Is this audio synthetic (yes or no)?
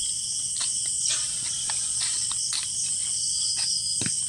no